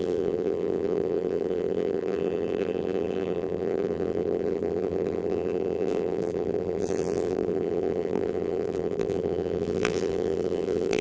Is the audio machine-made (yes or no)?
yes